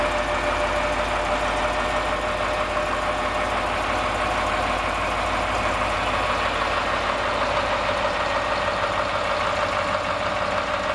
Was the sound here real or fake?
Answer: real